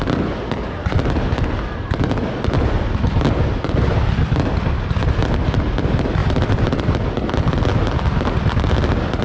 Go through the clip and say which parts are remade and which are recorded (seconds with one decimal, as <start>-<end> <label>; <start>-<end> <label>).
0.0-6.2 recorded; 6.2-6.8 remade; 6.8-9.2 recorded